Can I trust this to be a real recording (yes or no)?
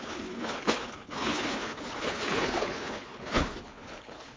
no